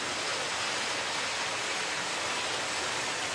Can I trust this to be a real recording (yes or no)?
yes